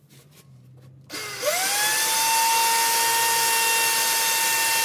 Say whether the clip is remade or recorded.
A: recorded